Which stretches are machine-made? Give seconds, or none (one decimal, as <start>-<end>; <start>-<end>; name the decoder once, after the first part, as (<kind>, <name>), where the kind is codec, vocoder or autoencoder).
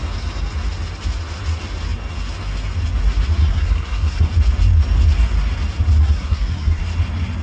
3.4-4.3 (codec, SNAC); 6.0-6.8